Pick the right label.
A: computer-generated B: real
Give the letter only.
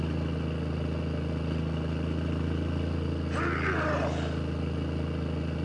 B